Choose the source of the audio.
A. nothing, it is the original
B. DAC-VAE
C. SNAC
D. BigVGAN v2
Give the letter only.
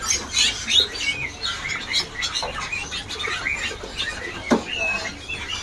A